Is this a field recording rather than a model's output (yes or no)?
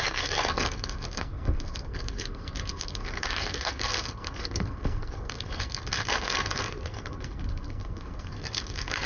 no